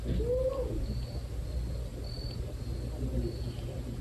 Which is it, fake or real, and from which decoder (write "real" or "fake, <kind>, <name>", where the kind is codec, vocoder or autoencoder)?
real